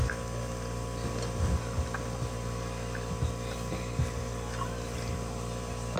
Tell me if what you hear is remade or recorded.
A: recorded